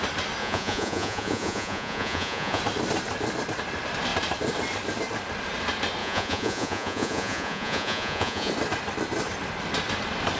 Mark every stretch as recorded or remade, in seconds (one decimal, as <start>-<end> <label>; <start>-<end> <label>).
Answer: 0.0-0.4 recorded; 0.4-2.6 remade; 2.6-6.0 recorded; 6.0-8.5 remade; 8.5-10.4 recorded